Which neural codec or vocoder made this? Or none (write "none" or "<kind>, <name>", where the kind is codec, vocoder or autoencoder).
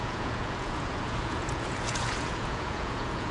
vocoder, Vocos